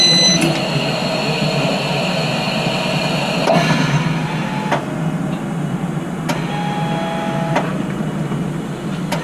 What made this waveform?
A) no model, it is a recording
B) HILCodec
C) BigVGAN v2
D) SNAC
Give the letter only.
A